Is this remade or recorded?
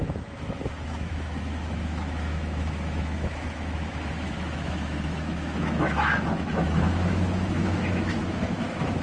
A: remade